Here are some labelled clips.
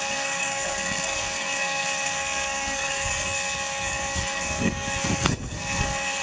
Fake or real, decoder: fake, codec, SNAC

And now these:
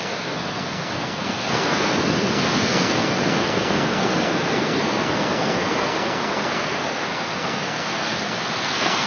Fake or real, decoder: fake, codec, SNAC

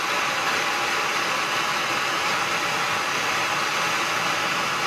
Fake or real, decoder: real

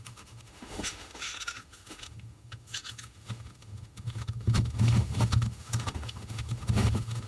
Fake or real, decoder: fake, autoencoder, DAC-VAE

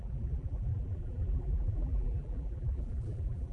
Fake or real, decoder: fake, vocoder, BigVGAN v2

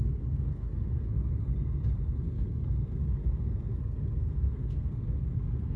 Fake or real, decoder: fake, codec, SNAC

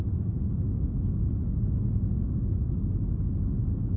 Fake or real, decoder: real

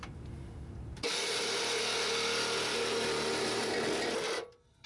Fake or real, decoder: real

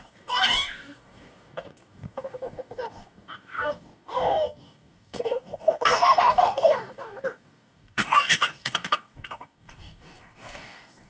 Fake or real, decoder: fake, codec, DAC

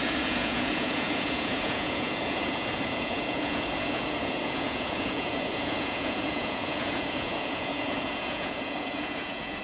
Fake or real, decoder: fake, vocoder, Vocos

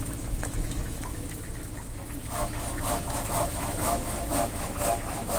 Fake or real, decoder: fake, autoencoder, DAC-VAE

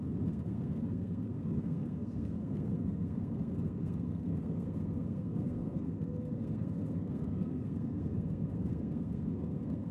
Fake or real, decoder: fake, codec, SNAC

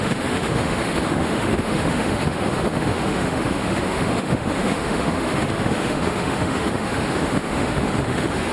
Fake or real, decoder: fake, autoencoder, DAC-VAE